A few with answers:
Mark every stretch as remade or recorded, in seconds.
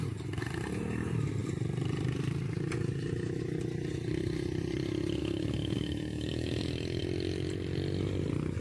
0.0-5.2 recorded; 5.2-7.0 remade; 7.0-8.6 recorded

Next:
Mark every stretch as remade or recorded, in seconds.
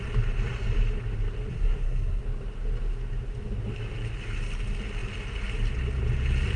0.0-1.5 recorded; 1.5-2.2 remade; 2.2-6.6 recorded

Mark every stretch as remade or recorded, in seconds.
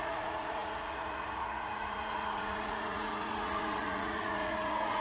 0.0-5.0 remade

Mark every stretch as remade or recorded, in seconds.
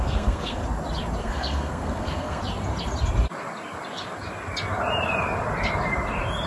0.0-0.6 remade; 0.6-1.2 recorded; 1.2-2.4 remade; 2.4-6.5 recorded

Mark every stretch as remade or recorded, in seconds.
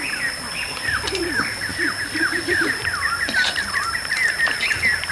0.0-5.1 recorded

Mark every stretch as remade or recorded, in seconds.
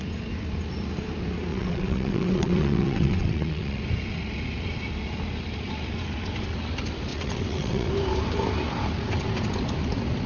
0.0-1.5 recorded; 1.5-3.8 remade; 3.8-7.1 recorded; 7.1-7.9 remade; 7.9-10.3 recorded